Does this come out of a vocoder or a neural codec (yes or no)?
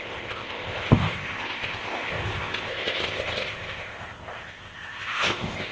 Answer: yes